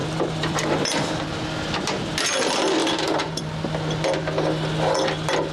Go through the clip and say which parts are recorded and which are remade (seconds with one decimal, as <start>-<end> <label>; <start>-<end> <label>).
0.0-1.4 remade; 1.4-2.8 recorded; 2.8-3.5 remade; 3.5-5.5 recorded